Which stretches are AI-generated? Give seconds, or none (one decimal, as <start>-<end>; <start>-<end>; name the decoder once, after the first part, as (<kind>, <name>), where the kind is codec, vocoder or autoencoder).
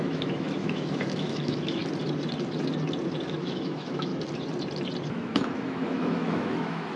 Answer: 0.0-1.8 (autoencoder, DAC-VAE); 3.2-4.1; 5.1-7.0